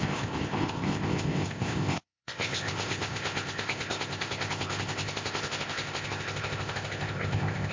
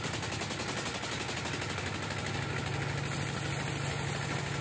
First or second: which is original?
second